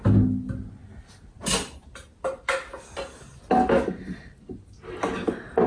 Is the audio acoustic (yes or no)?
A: yes